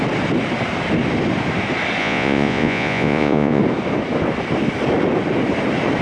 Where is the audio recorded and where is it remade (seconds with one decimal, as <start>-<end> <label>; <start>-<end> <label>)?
0.0-2.0 recorded; 2.0-3.6 remade; 3.6-6.0 recorded